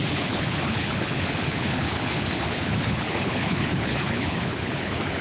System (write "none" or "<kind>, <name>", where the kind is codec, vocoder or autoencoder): codec, HILCodec